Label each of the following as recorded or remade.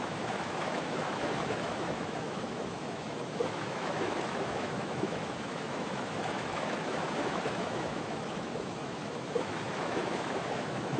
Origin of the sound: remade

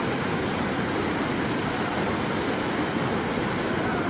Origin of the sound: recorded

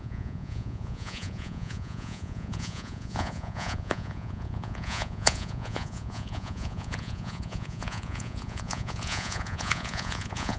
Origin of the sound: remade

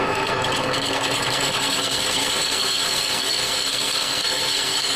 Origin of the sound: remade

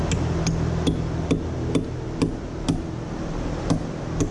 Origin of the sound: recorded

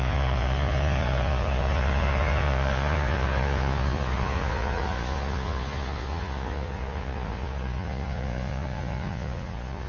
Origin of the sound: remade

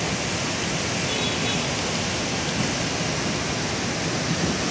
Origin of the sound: recorded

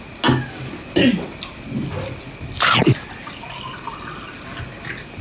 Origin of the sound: recorded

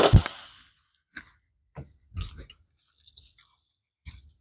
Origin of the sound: recorded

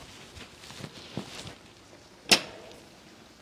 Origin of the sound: recorded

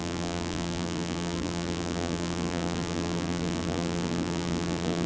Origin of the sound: remade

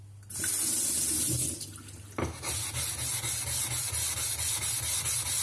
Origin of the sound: recorded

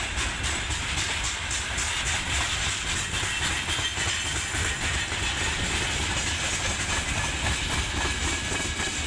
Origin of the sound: recorded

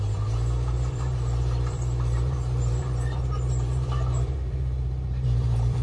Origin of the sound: remade